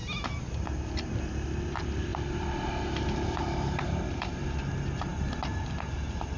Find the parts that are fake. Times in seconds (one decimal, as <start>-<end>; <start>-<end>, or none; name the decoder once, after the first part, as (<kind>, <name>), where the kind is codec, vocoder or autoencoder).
2.1-4.3 (vocoder, BigVGAN v2)